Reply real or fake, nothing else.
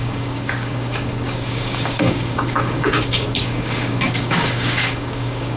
fake